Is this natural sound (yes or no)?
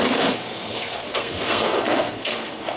no